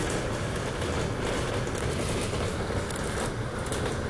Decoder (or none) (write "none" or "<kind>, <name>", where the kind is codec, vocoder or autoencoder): none